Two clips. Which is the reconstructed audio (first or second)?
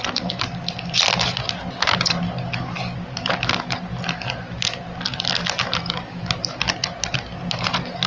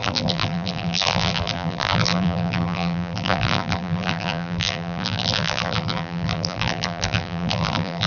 second